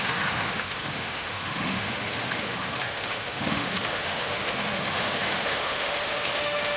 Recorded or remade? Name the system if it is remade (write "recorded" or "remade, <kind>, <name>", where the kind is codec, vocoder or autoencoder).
remade, autoencoder, DAC-VAE